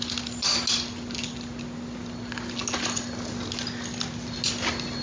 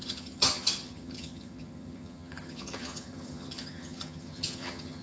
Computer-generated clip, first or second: second